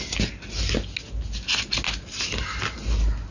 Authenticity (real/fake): real